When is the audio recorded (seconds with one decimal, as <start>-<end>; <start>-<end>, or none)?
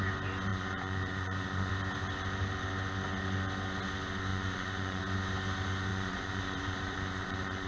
0.0-0.5; 1.7-4.3; 5.0-5.9